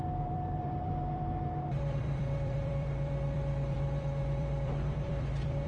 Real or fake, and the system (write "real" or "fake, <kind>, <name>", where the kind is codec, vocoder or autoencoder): fake, vocoder, BigVGAN v2